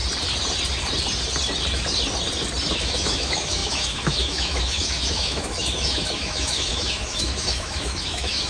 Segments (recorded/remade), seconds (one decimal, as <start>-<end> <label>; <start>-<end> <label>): 0.0-2.7 recorded; 2.7-8.5 remade

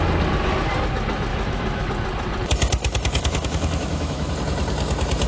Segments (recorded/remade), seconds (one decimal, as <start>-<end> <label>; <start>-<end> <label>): 0.0-1.3 recorded; 1.3-1.9 remade; 1.9-2.8 recorded; 2.8-4.3 remade; 4.3-5.3 recorded

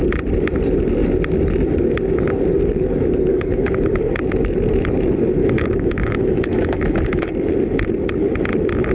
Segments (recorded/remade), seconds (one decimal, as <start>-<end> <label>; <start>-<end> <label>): 0.0-3.3 recorded; 3.3-4.0 remade; 4.0-5.4 recorded; 5.4-7.2 remade; 7.2-8.9 recorded

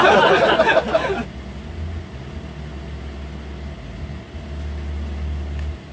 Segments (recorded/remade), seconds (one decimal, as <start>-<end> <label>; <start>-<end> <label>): 0.0-5.9 recorded